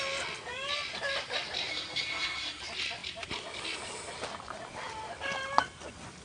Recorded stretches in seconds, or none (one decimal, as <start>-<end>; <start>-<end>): 0.0-1.7; 2.6-6.2